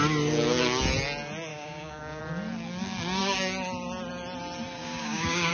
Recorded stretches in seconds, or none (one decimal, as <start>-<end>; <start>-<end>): 0.0-1.5; 2.2-4.8